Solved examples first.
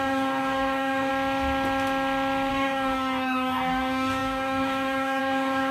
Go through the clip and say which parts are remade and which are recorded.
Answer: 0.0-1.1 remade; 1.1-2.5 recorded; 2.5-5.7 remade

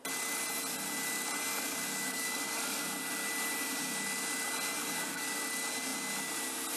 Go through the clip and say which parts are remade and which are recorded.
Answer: 0.0-1.5 recorded; 1.5-2.8 remade; 2.8-4.8 recorded; 4.8-5.4 remade; 5.4-6.8 recorded

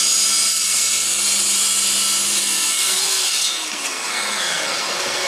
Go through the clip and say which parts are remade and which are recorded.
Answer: 0.0-0.5 recorded; 0.5-1.2 remade; 1.2-2.4 recorded; 2.4-5.3 remade